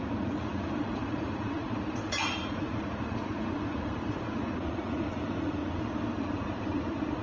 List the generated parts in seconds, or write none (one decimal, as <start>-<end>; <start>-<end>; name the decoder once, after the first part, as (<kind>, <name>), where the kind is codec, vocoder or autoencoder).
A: 0.0-5.6 (vocoder, Vocos); 6.2-7.2